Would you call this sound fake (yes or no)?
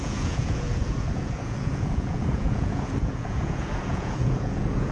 yes